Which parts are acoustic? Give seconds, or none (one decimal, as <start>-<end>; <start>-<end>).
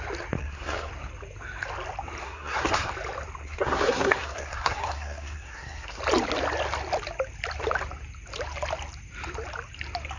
0.0-0.4; 0.9-2.2; 2.9-3.4; 6.0-10.2